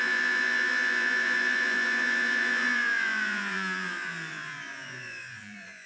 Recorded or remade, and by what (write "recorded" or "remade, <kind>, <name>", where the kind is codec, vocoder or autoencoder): remade, vocoder, Vocos